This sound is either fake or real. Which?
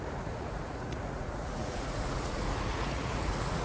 fake